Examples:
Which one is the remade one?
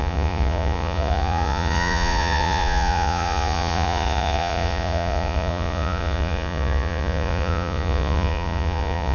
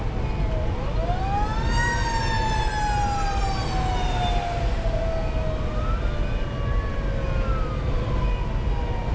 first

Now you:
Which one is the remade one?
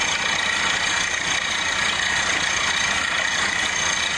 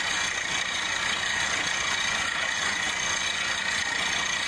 second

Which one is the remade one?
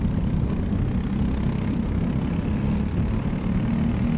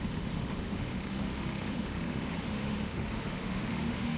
second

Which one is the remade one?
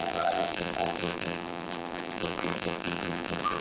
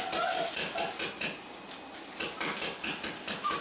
first